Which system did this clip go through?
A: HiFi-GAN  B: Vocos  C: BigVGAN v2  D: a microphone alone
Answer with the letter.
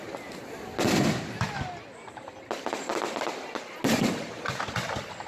D